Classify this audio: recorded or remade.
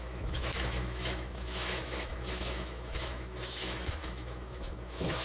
remade